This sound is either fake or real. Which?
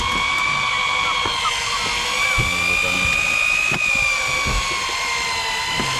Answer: real